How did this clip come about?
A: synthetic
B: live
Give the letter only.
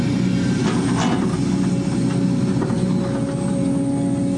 B